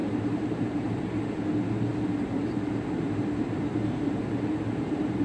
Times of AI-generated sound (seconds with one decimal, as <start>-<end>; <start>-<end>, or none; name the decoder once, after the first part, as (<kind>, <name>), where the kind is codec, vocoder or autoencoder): 0.0-1.0 (vocoder, BigVGAN v2); 1.9-5.2